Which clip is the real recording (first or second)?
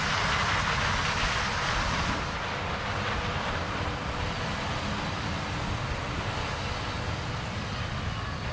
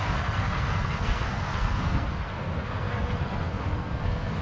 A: first